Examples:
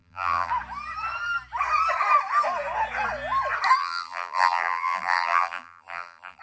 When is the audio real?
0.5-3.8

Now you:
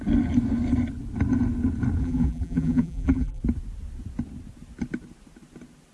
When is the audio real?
0.0-2.0; 3.4-5.9